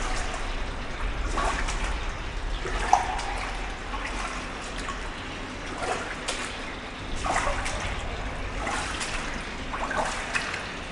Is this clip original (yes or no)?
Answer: yes